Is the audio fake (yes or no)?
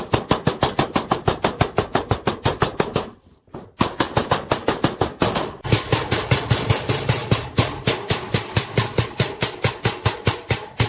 no